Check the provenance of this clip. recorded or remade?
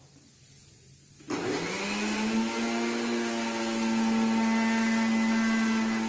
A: recorded